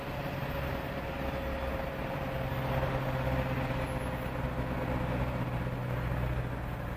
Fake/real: real